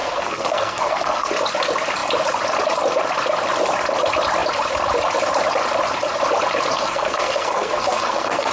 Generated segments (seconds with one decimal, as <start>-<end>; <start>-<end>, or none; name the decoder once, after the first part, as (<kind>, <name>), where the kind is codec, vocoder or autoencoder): 0.0-1.3 (codec, SNAC); 6.7-8.5